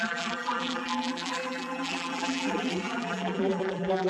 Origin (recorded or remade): remade